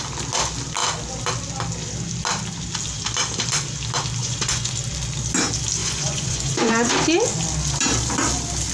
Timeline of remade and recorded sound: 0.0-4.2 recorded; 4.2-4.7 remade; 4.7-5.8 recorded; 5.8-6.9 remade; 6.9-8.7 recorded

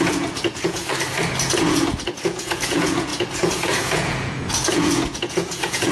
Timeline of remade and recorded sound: 0.0-0.8 remade; 0.8-1.6 recorded; 1.6-5.9 remade

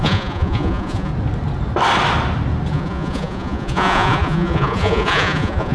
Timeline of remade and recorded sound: 0.0-1.1 remade; 1.1-2.7 recorded; 2.7-5.7 remade